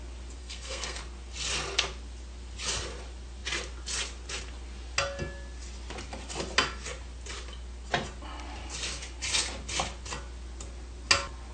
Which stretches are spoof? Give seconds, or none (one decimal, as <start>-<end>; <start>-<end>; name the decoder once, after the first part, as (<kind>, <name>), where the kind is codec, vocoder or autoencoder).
0.4-1.0 (codec, SNAC)